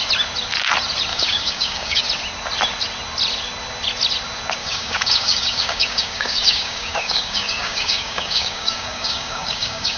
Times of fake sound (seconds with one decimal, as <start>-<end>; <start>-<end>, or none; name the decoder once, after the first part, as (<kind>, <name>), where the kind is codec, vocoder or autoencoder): 1.1-2.0 (codec, DAC); 4.6-10.0